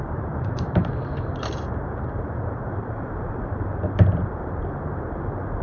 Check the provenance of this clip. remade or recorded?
remade